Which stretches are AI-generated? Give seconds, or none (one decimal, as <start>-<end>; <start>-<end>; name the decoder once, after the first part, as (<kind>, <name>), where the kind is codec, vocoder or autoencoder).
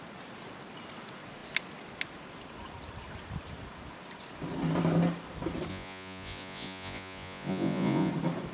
5.7-8.1 (vocoder, Vocos)